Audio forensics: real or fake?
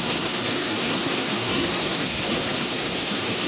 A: fake